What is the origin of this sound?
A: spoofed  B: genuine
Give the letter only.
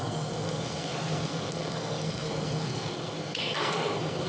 A